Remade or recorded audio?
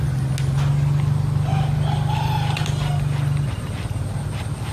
recorded